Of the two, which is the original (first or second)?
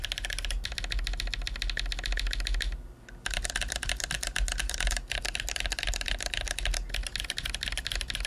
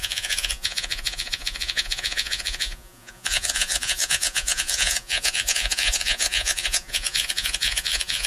first